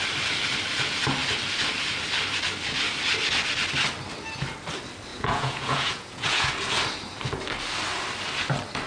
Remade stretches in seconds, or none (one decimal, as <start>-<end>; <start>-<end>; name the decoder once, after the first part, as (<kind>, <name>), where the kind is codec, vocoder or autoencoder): 5.1-6.5 (vocoder, Vocos)